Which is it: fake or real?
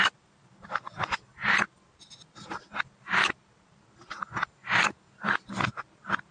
real